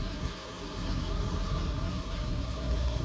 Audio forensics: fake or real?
fake